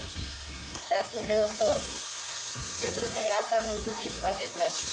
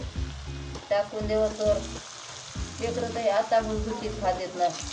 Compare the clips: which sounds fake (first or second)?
first